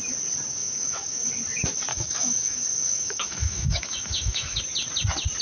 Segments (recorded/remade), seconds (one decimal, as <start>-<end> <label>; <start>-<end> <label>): 0.0-0.6 recorded; 0.6-1.3 remade; 1.3-1.9 recorded; 1.9-4.6 remade; 4.6-5.4 recorded

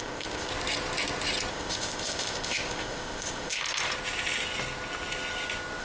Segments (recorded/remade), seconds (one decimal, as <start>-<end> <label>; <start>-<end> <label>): 0.0-0.5 remade; 0.5-1.5 recorded; 1.5-3.6 remade; 3.6-5.8 recorded

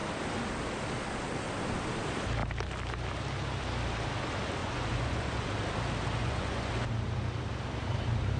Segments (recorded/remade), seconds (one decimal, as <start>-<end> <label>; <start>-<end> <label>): 0.0-4.6 recorded; 4.6-5.5 remade; 5.5-6.2 recorded; 6.2-6.7 remade; 6.7-8.4 recorded

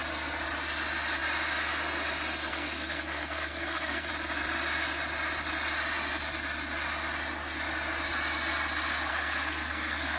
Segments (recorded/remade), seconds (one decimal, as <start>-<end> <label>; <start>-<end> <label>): 0.0-2.5 recorded; 2.5-4.1 remade; 4.1-9.1 recorded; 9.1-10.2 remade

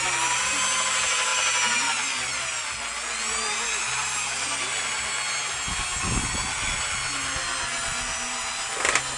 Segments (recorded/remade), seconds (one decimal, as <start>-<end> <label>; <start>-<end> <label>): 0.0-9.2 recorded

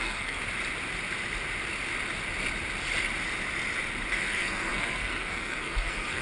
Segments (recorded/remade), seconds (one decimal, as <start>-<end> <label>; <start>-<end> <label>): 0.0-0.4 remade; 0.4-4.1 recorded; 4.1-6.2 remade

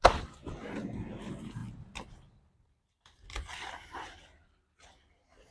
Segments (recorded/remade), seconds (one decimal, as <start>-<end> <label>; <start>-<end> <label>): 0.0-5.5 recorded

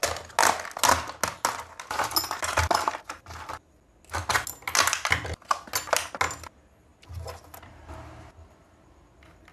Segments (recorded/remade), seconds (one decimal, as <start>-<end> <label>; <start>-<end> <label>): 0.0-9.5 recorded